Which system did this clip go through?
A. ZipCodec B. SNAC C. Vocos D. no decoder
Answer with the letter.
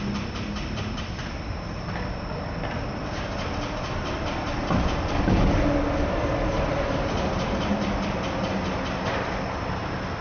D